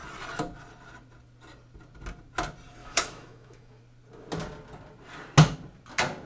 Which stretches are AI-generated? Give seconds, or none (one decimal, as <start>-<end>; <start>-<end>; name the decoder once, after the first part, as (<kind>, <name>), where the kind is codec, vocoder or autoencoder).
2.8-3.8 (autoencoder, DAC-VAE)